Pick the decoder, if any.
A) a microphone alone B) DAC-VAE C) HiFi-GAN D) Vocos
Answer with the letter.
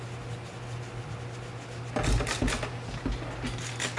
A